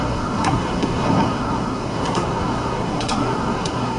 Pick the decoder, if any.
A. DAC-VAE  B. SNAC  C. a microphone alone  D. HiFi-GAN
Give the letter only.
B